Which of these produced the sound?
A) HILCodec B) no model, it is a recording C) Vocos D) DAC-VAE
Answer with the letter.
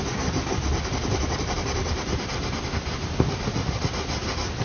B